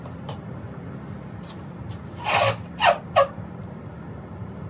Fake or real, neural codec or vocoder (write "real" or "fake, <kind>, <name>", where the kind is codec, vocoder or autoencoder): real